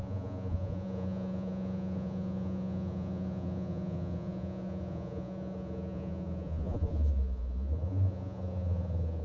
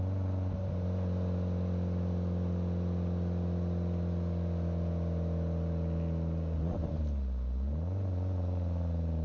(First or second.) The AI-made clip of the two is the first